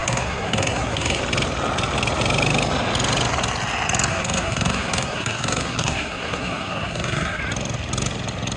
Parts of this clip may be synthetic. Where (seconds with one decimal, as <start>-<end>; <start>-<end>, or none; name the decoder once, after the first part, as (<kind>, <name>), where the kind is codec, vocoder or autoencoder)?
0.0-1.2 (codec, SNAC); 4.1-7.4

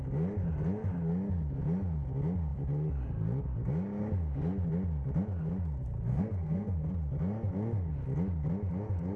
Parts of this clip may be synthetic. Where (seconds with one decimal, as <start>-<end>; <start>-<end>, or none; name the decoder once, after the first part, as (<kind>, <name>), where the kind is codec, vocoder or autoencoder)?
6.1-6.9 (codec, SNAC)

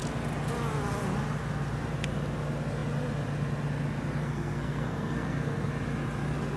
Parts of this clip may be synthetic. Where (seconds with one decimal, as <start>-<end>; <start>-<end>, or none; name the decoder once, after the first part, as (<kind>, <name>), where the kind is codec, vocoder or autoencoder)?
4.2-5.7 (codec, SNAC)

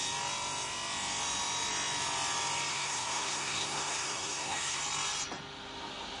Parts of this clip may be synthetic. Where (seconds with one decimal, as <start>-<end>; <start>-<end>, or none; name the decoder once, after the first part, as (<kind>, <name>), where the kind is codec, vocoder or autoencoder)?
2.7-4.8 (codec, SNAC)

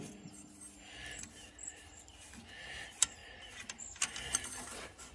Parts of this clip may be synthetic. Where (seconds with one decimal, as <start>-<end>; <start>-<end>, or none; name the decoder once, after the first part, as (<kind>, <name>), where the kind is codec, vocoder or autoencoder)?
none